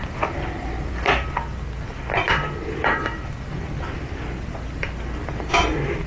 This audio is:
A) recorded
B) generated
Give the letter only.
A